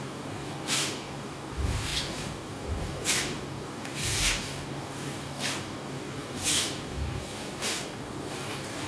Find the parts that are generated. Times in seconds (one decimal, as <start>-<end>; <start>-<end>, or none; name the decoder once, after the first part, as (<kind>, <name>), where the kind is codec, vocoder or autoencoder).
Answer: 0.0-8.9 (codec, DAC)